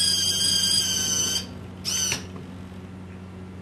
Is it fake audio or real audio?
real